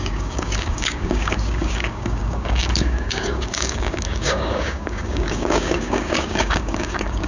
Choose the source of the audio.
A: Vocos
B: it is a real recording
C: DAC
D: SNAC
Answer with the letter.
C